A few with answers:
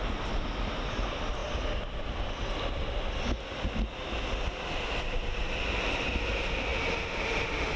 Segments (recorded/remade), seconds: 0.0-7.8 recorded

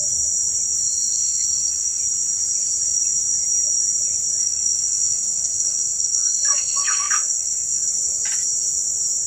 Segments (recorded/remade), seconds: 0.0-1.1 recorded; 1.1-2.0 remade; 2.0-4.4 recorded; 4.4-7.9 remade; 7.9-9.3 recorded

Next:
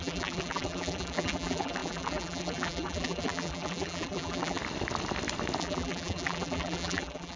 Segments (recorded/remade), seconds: 0.0-4.6 remade; 4.6-5.6 recorded; 5.6-7.4 remade

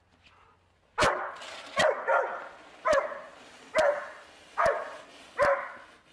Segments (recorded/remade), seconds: 0.0-6.1 recorded

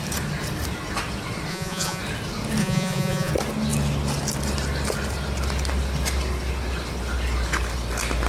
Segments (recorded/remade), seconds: 0.0-1.5 recorded; 1.5-2.0 remade; 2.0-2.6 recorded; 2.6-3.3 remade; 3.3-8.3 recorded

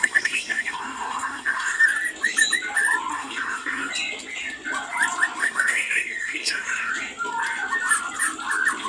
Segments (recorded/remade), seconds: 0.0-1.8 remade; 1.8-3.1 recorded; 3.1-3.9 remade; 3.9-5.4 recorded; 5.4-6.9 remade; 6.9-8.9 recorded

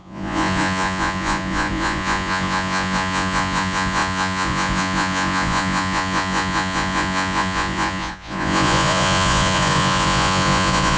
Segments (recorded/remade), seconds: 0.0-11.0 remade

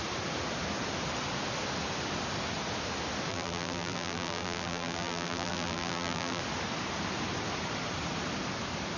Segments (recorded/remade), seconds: 0.0-3.3 recorded; 3.3-6.4 remade; 6.4-9.0 recorded